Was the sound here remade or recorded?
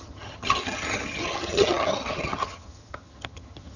remade